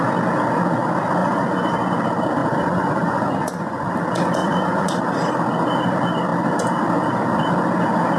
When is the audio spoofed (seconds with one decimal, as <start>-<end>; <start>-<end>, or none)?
1.2-1.7; 2.4-3.9; 4.4-5.0